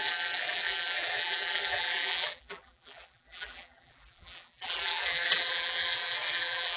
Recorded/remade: remade